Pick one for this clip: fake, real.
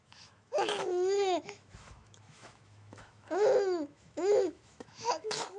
fake